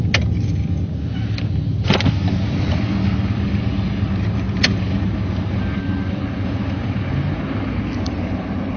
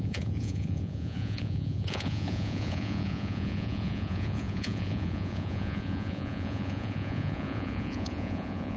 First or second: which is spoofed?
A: second